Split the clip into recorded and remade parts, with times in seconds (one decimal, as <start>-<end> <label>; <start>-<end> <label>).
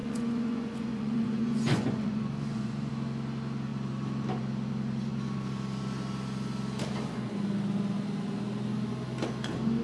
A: 0.0-2.9 remade; 2.9-9.8 recorded